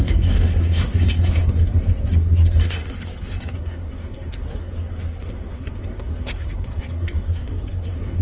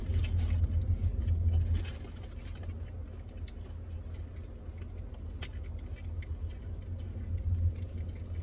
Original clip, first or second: second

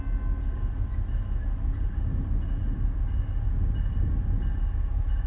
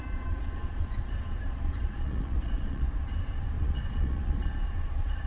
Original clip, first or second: first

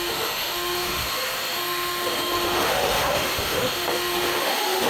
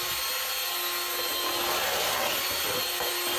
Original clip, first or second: second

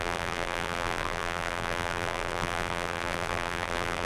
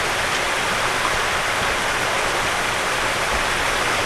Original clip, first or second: second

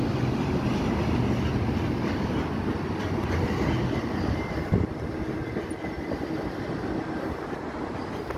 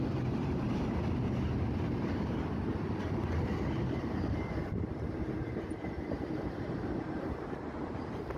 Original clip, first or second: first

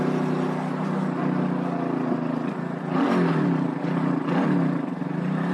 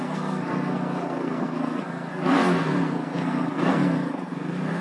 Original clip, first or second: first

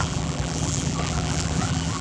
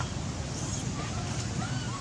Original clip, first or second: second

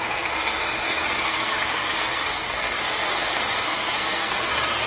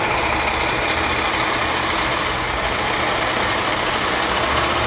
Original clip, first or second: second